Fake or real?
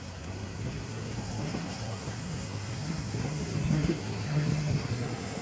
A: fake